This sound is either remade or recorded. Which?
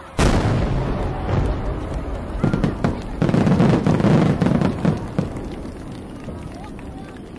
recorded